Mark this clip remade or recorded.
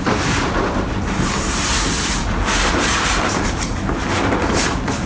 remade